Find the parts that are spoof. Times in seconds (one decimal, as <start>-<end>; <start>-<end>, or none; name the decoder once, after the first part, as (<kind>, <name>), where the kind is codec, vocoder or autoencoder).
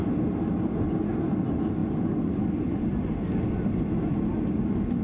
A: 1.8-3.4 (vocoder, BigVGAN v2)